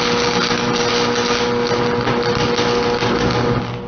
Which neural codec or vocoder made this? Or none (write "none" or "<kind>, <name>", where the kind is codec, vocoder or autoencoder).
none